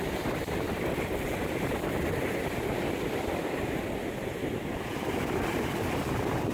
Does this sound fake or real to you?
real